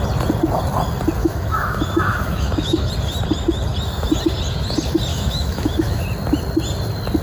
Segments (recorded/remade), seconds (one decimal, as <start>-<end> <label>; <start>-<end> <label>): 0.0-1.2 recorded; 1.2-2.9 remade; 2.9-5.1 recorded; 5.1-6.0 remade; 6.0-7.2 recorded